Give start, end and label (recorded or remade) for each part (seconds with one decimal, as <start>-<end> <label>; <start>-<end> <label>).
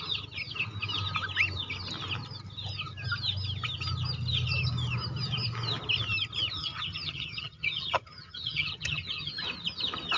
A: 0.0-6.6 recorded; 6.6-9.3 remade; 9.3-10.2 recorded